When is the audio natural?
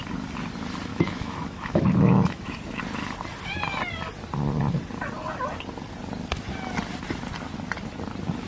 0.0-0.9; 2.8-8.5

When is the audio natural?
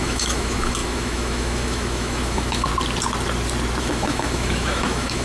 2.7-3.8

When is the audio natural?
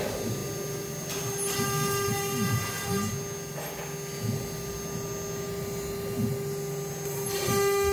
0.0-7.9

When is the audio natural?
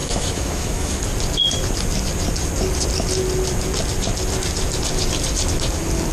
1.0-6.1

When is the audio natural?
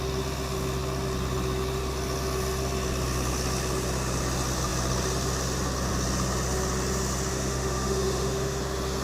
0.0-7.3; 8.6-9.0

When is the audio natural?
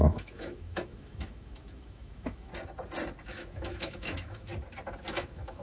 2.5-3.2; 4.5-5.1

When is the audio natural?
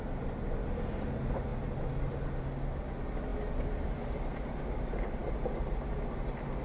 0.0-6.6